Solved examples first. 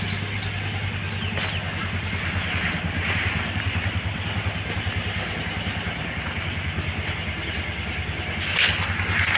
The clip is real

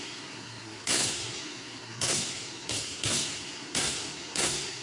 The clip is fake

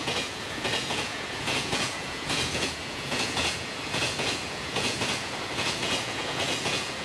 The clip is fake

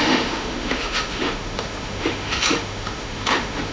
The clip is fake